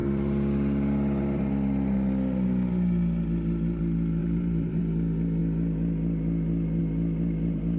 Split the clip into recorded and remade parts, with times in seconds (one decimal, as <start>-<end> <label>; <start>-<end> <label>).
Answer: 0.0-4.2 recorded; 4.2-4.8 remade; 4.8-7.8 recorded